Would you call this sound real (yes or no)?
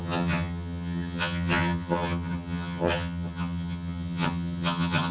no